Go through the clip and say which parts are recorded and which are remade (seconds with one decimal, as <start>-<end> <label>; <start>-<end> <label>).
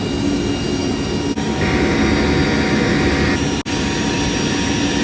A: 0.0-5.0 recorded